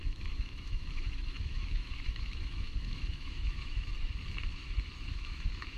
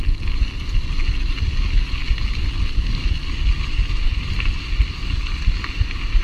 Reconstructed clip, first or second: first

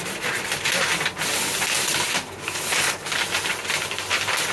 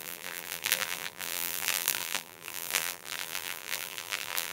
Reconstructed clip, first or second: second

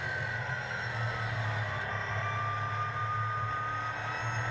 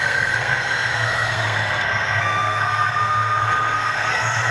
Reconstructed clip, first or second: second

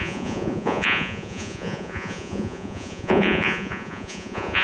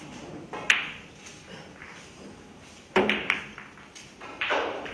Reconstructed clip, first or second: first